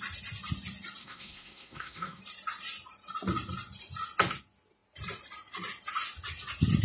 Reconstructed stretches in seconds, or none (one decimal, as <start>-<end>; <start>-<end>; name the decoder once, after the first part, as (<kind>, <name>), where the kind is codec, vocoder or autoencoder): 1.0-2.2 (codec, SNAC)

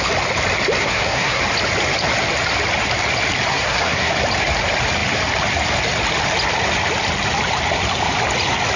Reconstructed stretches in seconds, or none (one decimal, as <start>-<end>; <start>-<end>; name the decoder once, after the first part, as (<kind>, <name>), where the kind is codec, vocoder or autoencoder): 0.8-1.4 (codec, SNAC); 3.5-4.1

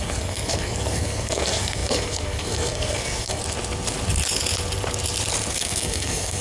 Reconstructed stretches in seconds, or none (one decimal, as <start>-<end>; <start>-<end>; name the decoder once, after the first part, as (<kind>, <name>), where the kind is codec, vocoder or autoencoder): 0.0-3.4 (codec, SNAC); 5.5-6.4

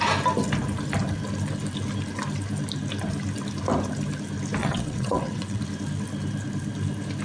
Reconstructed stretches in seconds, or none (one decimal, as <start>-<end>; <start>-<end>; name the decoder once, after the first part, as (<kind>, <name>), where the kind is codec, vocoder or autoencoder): 4.6-5.6 (vocoder, WaveNeXt)

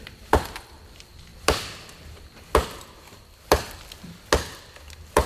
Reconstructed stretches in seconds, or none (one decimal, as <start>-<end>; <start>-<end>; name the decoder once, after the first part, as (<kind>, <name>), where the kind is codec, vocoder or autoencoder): none

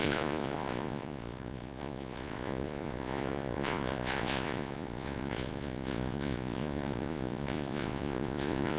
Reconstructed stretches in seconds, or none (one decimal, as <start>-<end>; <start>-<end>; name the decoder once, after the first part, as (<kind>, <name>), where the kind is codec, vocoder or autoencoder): 0.0-8.8 (vocoder, Vocos)

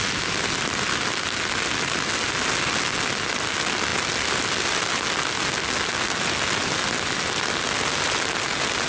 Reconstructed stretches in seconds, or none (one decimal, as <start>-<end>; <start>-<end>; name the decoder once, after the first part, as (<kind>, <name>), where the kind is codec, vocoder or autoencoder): none

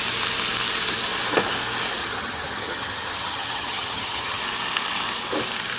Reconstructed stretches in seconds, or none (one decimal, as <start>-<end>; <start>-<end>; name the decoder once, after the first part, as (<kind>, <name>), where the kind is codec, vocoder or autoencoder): 2.0-4.4 (vocoder, HiFi-GAN)